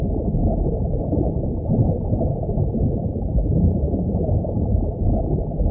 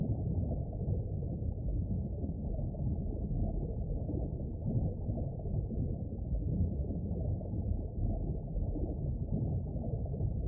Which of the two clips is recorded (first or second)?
second